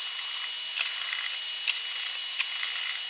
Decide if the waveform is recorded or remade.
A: recorded